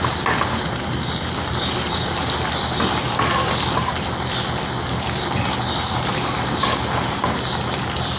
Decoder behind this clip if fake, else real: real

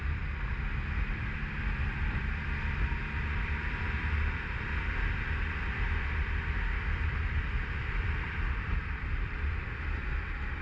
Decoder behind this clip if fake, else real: fake, vocoder, BigVGAN v2